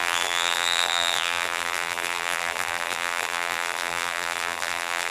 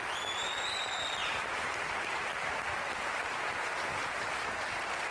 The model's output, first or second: first